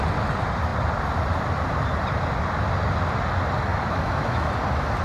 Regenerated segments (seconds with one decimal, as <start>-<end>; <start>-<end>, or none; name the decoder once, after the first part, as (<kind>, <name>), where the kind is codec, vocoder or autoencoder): 3.7-4.5 (autoencoder, DAC-VAE)